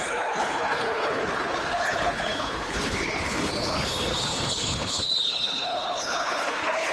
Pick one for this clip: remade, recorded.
remade